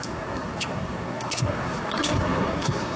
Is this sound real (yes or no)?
no